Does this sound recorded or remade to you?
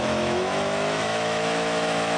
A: remade